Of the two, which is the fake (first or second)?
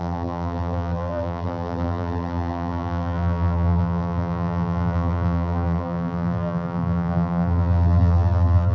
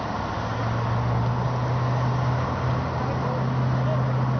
first